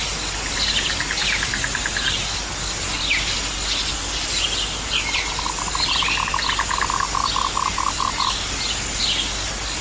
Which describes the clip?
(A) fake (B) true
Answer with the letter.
B